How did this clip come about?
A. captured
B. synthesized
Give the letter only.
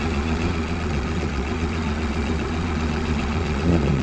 B